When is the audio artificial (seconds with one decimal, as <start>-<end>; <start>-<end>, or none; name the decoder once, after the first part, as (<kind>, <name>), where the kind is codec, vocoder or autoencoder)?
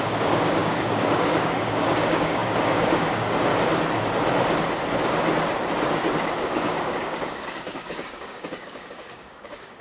0.0-3.5 (codec, DAC); 6.4-9.8